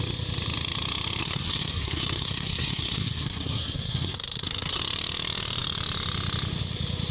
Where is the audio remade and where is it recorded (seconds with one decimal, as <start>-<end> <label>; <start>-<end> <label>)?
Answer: 0.0-1.2 recorded; 1.2-4.8 remade; 4.8-7.1 recorded